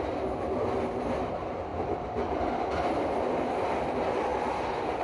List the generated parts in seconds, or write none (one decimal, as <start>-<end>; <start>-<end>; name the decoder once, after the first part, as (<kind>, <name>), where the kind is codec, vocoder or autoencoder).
none